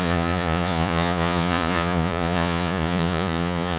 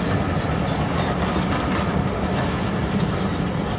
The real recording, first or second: second